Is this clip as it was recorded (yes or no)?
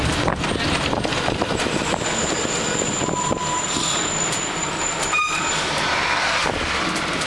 no